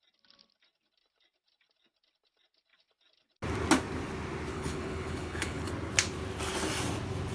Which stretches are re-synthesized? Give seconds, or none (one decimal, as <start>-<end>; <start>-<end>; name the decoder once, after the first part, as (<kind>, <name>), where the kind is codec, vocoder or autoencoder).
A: 4.5-5.7 (codec, HILCodec)